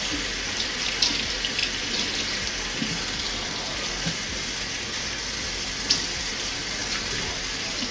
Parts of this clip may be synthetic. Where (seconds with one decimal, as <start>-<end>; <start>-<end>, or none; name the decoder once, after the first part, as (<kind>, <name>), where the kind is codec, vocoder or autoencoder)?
none